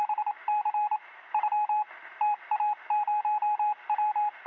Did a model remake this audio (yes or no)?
yes